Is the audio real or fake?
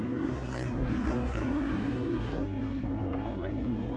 fake